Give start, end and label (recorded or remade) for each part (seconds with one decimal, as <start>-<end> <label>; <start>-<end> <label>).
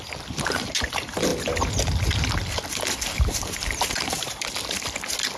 0.0-5.4 recorded